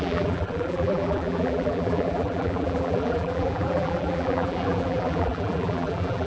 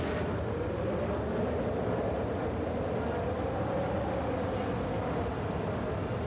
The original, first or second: second